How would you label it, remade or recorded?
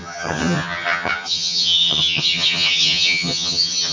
remade